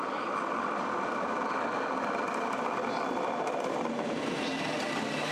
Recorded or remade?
recorded